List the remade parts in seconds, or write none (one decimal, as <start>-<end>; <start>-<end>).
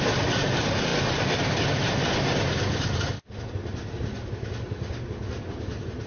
none